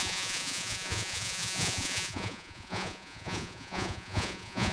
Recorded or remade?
remade